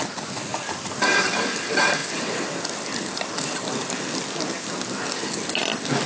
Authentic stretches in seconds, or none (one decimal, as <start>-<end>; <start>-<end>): 0.0-0.5; 1.1-2.0; 3.9-6.1